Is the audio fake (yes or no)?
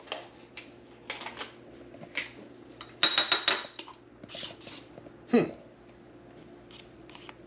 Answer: no